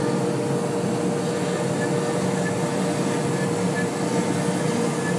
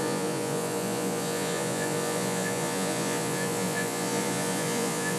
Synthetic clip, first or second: second